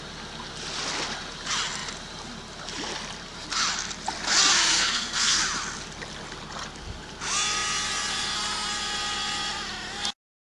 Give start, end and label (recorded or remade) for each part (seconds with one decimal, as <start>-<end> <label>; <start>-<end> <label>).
0.0-4.7 recorded; 4.7-5.4 remade; 5.4-10.4 recorded